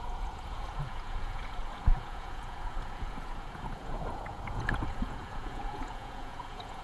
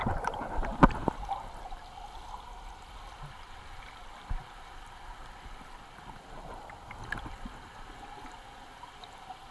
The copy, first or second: first